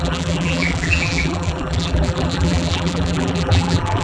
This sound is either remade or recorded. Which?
remade